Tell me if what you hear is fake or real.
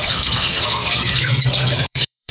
fake